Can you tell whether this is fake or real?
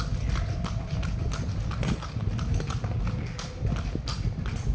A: real